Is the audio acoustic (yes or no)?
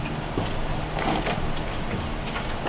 yes